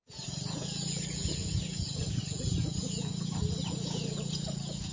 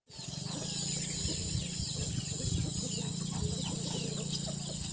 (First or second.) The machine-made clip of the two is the first